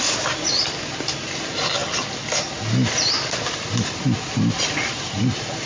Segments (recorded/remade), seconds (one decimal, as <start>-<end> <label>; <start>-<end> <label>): 0.0-5.7 recorded